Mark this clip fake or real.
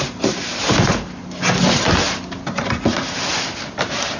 real